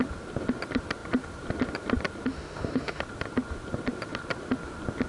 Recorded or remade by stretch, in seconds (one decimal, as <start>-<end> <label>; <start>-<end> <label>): 0.0-2.3 recorded; 2.3-3.0 remade; 3.0-5.1 recorded